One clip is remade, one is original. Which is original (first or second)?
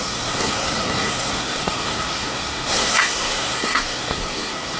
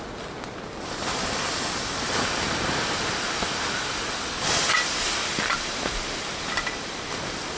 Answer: second